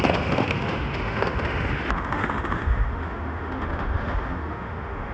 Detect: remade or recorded remade